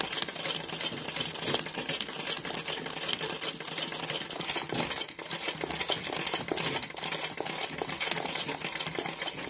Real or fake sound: real